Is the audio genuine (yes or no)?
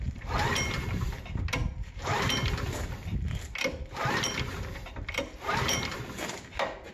yes